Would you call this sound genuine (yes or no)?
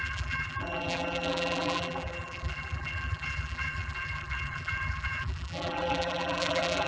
no